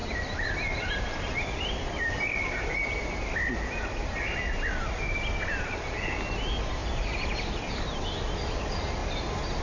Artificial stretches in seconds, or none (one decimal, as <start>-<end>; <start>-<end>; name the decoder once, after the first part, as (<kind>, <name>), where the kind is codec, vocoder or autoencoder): none